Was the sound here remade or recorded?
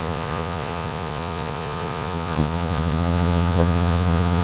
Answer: remade